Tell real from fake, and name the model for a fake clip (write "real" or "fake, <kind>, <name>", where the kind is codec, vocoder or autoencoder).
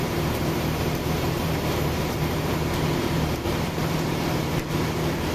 fake, vocoder, BigVGAN v2